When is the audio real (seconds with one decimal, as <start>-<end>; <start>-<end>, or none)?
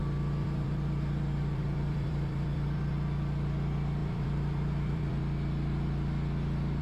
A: 2.9-4.0; 5.2-6.8